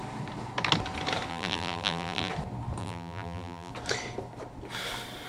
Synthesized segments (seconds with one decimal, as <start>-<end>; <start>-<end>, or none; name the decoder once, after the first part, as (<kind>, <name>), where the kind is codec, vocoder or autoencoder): 1.3-2.3 (vocoder, BigVGAN v2); 2.8-3.7